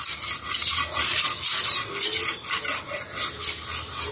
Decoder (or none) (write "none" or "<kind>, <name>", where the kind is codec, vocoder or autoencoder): none